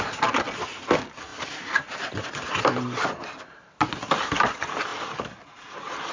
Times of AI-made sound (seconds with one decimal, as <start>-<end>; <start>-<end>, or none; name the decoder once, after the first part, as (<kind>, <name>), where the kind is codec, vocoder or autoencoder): 1.3-3.5 (vocoder, BigVGAN v2)